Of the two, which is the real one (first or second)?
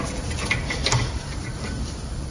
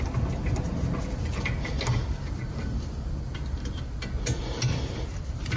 second